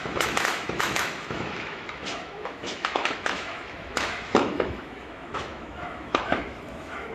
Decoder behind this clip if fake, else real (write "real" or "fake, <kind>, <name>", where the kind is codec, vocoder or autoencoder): fake, autoencoder, DAC-VAE